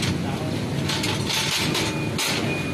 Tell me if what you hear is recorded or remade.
recorded